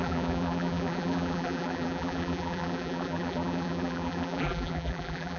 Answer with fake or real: fake